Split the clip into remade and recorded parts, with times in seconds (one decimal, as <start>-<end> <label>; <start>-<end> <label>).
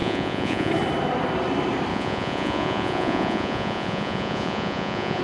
0.0-0.7 remade; 0.7-1.9 recorded; 1.9-5.2 remade